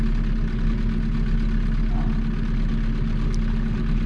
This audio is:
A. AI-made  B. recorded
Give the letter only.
B